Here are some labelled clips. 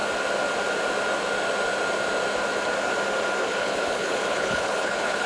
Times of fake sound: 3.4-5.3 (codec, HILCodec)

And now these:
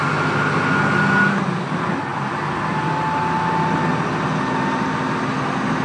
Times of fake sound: none

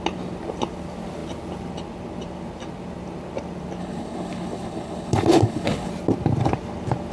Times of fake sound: 3.8-5.9 (codec, HILCodec)

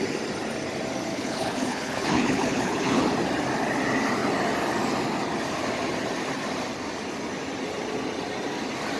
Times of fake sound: 1.1-3.0 (codec, HILCodec)

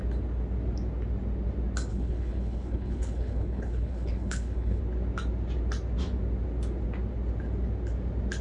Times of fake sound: 1.9-4.8 (codec, HILCodec)